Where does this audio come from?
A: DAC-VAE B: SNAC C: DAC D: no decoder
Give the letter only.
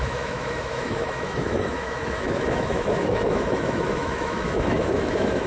A